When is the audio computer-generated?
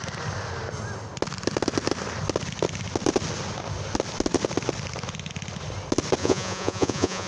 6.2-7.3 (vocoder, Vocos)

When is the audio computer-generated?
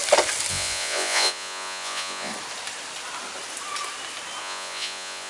0.5-2.3 (vocoder, Vocos); 4.4-5.3